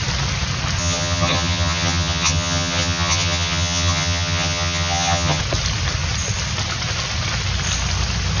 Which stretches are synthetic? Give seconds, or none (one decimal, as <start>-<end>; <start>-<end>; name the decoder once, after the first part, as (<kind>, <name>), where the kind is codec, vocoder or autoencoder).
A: 0.8-5.4 (vocoder, HiFi-GAN)